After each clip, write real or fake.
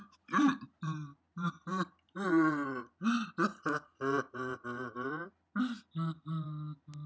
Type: real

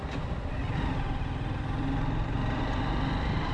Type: real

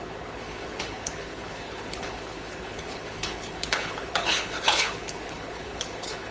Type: fake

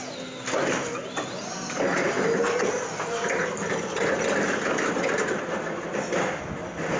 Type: real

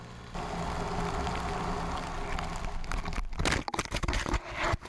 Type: real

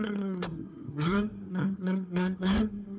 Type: fake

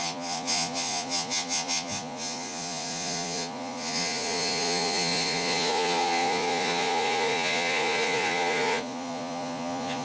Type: fake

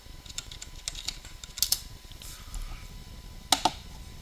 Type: real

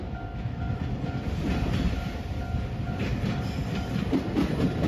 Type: real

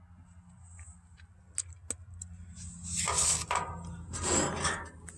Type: real